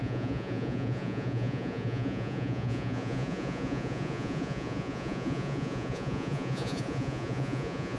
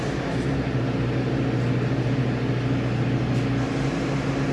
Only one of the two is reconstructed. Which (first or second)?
first